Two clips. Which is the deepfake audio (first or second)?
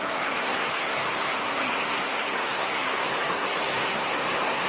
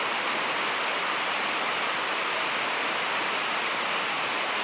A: first